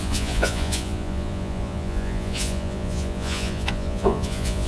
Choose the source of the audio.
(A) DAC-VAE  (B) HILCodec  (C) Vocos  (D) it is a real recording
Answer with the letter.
C